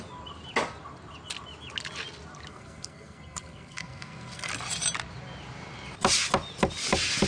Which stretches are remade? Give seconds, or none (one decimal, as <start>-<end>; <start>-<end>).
2.5-4.5